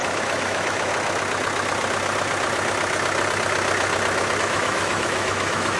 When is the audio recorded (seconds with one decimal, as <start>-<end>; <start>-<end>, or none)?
0.9-4.4